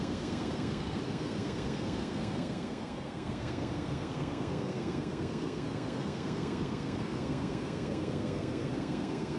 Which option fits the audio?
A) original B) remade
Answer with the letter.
B